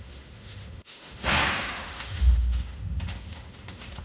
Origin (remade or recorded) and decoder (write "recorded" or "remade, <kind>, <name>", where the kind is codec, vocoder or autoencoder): remade, autoencoder, DAC-VAE